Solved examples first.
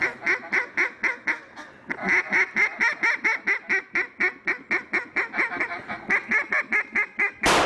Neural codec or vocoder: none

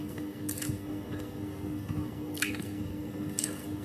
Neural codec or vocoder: codec, SNAC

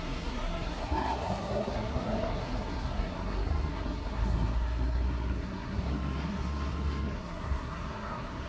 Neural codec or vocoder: codec, SNAC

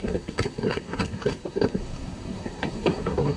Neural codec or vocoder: codec, SNAC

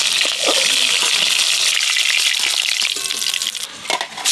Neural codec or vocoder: none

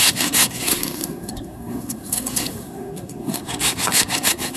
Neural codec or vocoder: codec, SNAC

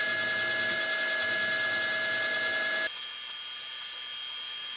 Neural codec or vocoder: none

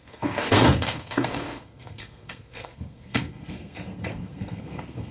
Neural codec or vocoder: codec, SNAC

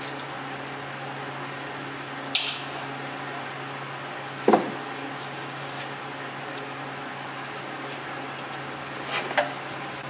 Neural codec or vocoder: none